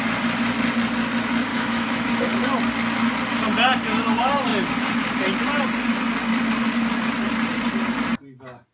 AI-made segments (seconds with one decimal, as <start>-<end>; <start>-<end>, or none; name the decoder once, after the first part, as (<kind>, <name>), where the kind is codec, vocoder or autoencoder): 1.5-2.4 (autoencoder, DAC-VAE)